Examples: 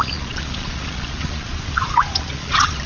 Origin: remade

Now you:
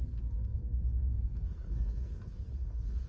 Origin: remade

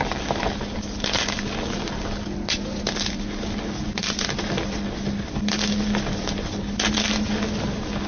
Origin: recorded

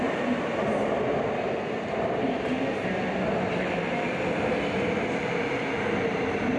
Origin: recorded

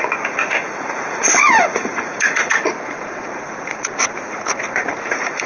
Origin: remade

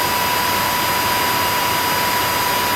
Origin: recorded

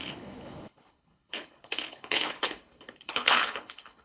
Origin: remade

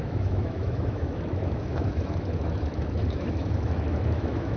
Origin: remade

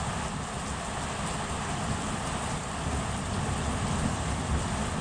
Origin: recorded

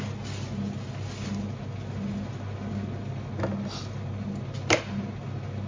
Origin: recorded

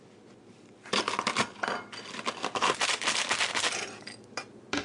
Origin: recorded